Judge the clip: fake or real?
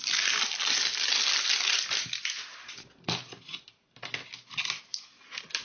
real